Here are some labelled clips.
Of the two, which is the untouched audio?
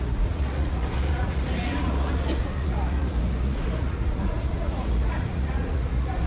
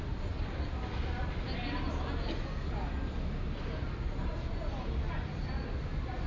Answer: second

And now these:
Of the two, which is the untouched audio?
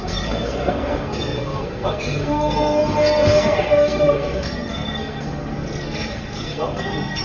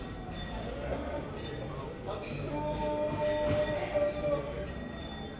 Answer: second